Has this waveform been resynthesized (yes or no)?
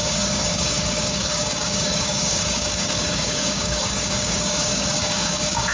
yes